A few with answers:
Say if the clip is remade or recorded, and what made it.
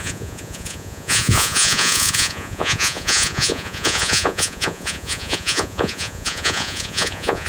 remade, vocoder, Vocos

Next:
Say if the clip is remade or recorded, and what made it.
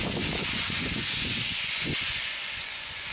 remade, vocoder, Vocos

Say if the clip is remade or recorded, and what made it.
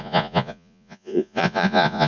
remade, vocoder, Vocos